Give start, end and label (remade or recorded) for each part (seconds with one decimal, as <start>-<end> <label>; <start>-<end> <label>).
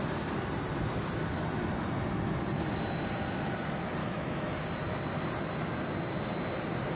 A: 0.0-4.0 recorded; 4.0-4.5 remade; 4.5-7.0 recorded